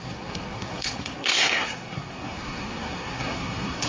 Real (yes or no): no